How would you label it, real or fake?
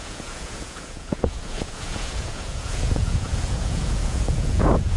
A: fake